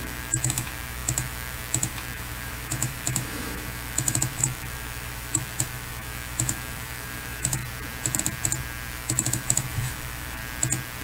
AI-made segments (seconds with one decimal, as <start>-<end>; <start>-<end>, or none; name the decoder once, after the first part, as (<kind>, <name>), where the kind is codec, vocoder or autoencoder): 0.0-7.6 (autoencoder, DAC-VAE); 8.9-10.4